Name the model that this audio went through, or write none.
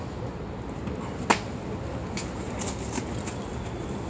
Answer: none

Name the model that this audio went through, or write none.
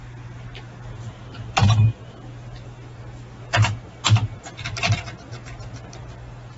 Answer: none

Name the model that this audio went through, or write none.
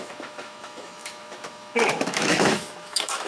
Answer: autoencoder, DAC-VAE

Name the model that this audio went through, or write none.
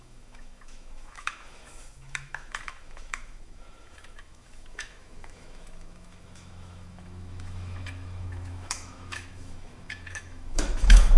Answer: autoencoder, DAC-VAE